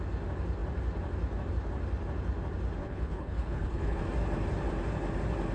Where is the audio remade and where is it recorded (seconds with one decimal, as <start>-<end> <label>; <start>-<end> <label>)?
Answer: 0.0-2.8 recorded; 2.8-4.0 remade; 4.0-5.5 recorded